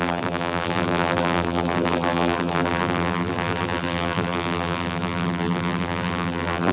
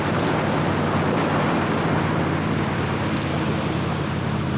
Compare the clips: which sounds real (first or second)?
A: second